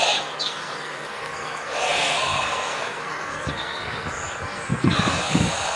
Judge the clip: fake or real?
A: fake